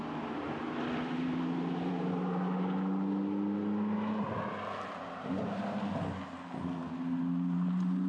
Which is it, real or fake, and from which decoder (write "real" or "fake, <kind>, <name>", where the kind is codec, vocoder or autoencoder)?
real